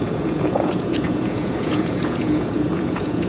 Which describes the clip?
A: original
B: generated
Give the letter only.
B